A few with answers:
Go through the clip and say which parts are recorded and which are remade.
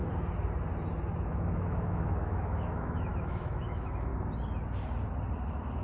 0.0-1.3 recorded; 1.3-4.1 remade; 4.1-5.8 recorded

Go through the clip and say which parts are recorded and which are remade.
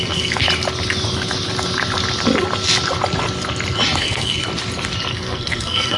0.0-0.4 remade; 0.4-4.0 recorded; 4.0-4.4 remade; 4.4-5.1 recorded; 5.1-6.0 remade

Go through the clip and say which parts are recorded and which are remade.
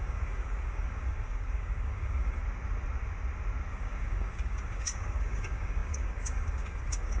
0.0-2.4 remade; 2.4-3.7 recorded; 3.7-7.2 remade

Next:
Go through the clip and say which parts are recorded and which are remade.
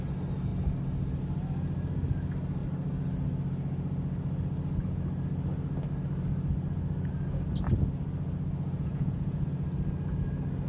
0.0-8.9 recorded; 8.9-9.5 remade; 9.5-10.7 recorded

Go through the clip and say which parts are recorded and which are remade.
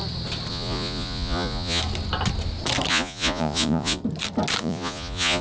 0.0-0.5 recorded; 0.5-1.8 remade; 1.8-2.9 recorded; 2.9-4.0 remade; 4.0-4.6 recorded; 4.6-5.4 remade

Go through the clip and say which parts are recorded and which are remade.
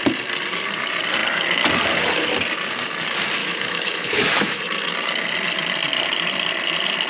0.0-3.4 recorded; 3.4-4.6 remade; 4.6-7.1 recorded